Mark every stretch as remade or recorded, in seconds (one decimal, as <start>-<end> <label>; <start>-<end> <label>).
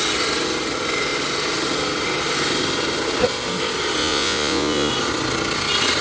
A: 0.0-4.0 recorded; 4.0-4.9 remade; 4.9-6.0 recorded